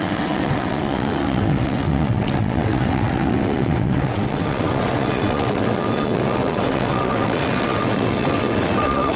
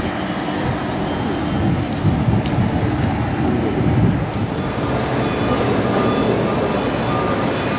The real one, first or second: second